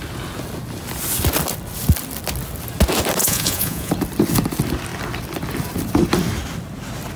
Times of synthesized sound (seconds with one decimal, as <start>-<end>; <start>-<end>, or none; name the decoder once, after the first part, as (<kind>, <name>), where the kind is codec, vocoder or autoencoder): 3.2-3.9 (vocoder, Vocos)